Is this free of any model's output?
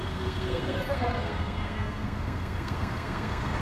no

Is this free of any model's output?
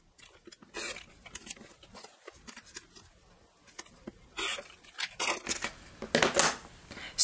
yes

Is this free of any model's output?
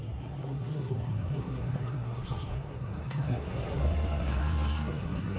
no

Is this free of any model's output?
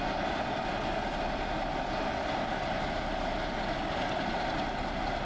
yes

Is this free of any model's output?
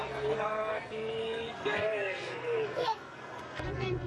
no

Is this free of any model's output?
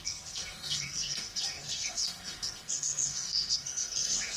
no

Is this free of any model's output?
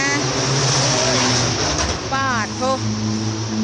yes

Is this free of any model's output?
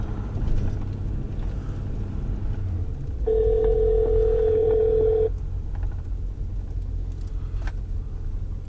yes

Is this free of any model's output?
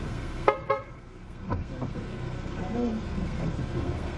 no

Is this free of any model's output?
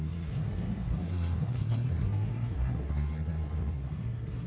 no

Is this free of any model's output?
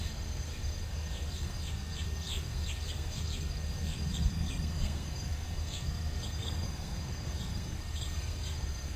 no